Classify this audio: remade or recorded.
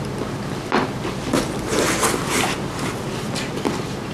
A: recorded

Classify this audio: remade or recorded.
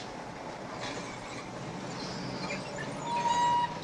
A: recorded